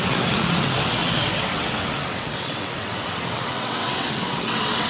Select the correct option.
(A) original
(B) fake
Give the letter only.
B